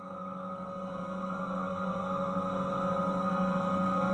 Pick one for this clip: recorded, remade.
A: remade